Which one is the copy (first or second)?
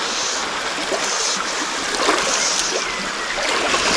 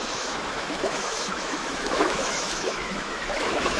second